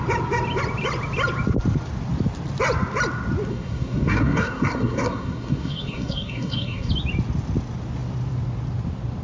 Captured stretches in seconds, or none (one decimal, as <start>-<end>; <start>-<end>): 0.0-3.5; 6.9-9.2